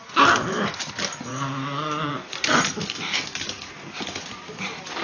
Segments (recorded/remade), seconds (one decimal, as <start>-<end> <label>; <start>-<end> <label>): 0.0-1.3 recorded; 1.3-2.1 remade; 2.1-3.1 recorded; 3.1-3.7 remade; 3.7-5.0 recorded